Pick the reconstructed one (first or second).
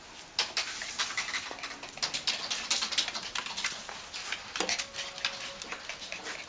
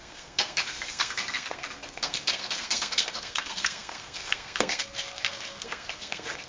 second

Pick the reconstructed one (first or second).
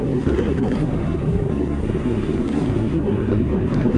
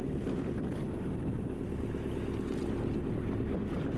first